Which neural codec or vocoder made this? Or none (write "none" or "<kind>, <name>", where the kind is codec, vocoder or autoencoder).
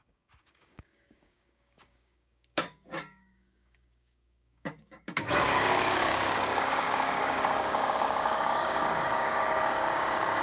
codec, DAC